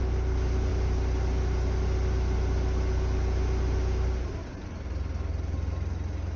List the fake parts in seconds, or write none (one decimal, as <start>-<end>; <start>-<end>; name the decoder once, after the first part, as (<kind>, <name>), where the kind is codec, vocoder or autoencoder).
none